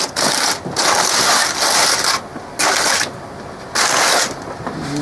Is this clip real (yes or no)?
yes